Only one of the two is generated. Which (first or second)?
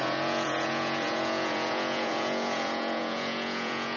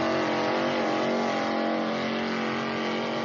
first